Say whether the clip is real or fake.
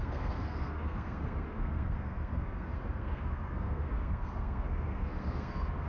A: fake